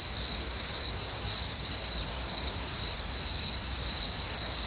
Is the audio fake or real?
fake